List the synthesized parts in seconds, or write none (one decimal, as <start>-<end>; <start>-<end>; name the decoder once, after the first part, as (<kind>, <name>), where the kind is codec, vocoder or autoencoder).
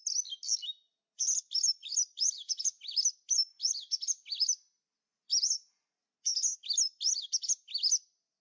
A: none